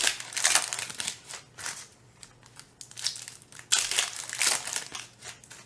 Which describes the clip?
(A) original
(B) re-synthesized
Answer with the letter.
A